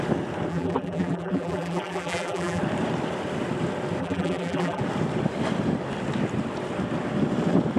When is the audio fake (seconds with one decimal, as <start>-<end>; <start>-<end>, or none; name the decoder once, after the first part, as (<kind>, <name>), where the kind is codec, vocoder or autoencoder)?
0.5-2.6 (vocoder, BigVGAN v2); 4.0-4.8